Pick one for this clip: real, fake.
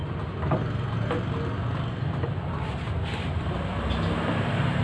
real